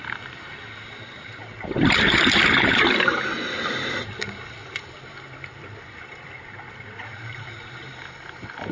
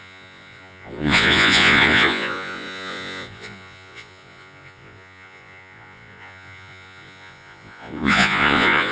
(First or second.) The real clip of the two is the first